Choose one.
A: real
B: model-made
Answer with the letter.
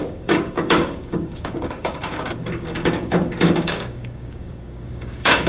B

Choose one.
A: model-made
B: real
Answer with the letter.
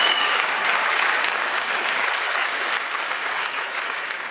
A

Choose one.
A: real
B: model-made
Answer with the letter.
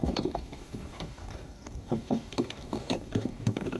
B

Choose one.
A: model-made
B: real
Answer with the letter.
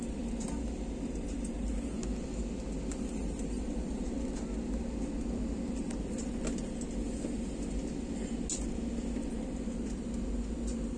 B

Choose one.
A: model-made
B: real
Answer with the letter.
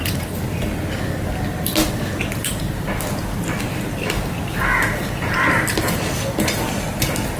B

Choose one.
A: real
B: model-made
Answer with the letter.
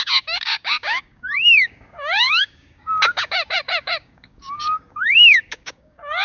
B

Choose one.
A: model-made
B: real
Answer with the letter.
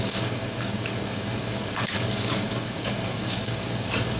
A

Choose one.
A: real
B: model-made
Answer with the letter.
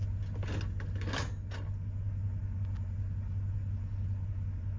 A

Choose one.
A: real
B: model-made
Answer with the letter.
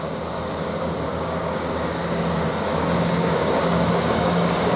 B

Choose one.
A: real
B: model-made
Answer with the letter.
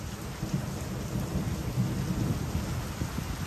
A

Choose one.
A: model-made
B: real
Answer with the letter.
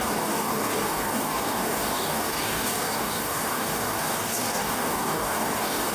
A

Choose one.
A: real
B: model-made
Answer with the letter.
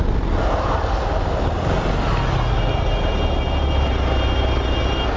A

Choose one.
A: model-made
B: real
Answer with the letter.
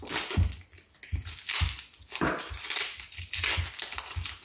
B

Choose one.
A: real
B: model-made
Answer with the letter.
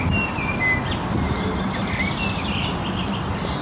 A